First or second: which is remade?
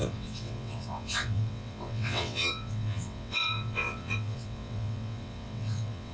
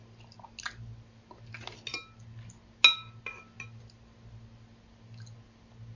first